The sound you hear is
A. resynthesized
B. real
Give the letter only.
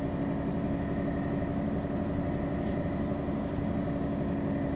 B